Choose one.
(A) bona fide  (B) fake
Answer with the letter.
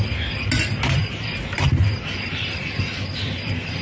A